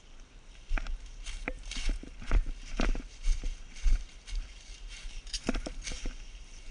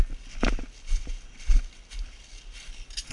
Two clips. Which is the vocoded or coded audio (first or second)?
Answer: first